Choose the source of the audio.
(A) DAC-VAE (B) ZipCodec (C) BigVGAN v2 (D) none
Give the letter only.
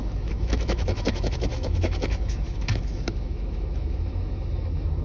A